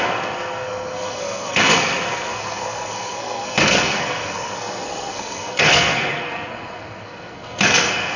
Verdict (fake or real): fake